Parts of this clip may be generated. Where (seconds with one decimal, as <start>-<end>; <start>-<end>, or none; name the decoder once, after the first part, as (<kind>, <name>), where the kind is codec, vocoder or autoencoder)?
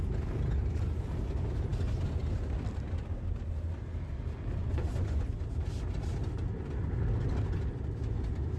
4.6-5.3 (vocoder, Vocos)